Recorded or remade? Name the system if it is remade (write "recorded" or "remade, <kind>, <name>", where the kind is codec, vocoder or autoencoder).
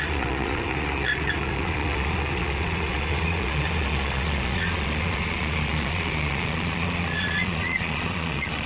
remade, vocoder, Vocos